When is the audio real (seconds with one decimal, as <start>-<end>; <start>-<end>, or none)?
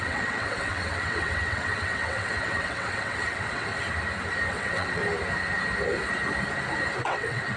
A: 3.7-4.5; 5.0-7.0